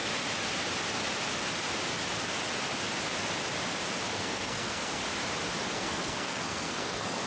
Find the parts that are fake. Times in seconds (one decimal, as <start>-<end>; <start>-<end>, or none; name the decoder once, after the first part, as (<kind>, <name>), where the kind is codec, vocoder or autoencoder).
4.1-5.0 (codec, SNAC); 5.7-7.3